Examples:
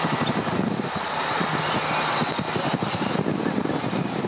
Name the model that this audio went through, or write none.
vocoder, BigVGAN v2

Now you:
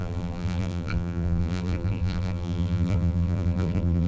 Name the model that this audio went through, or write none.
vocoder, BigVGAN v2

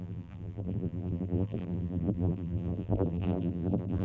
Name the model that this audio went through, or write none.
vocoder, BigVGAN v2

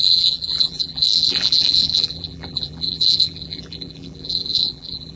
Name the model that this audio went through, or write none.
vocoder, BigVGAN v2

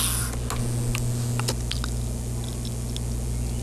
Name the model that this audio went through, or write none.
none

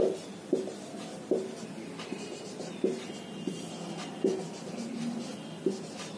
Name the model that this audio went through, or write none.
none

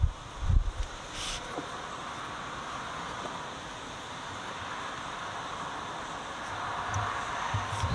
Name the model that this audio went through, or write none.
vocoder, BigVGAN v2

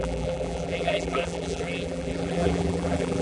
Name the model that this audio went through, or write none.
vocoder, BigVGAN v2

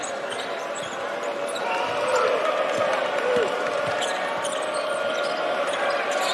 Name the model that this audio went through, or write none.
vocoder, BigVGAN v2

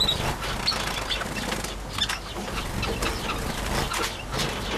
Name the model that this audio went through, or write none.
none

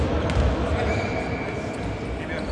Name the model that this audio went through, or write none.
none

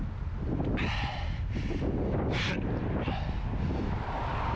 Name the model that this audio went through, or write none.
none